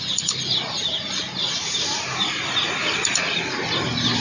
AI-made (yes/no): no